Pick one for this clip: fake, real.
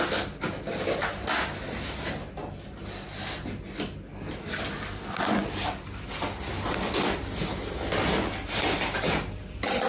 real